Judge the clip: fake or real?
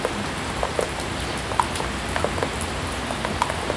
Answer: real